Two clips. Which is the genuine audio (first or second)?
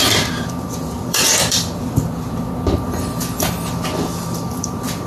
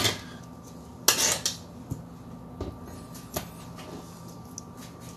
second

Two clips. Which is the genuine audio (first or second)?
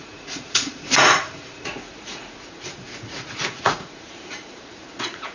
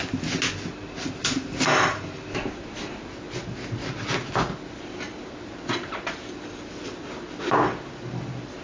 second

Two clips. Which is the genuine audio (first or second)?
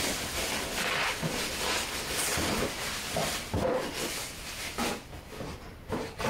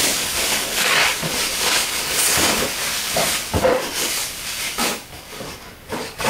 first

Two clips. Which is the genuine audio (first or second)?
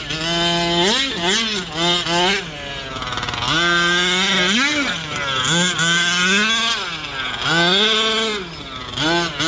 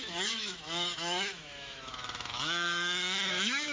first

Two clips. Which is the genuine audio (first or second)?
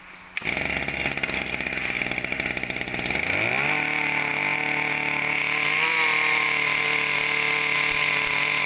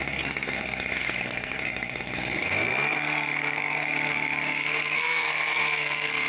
first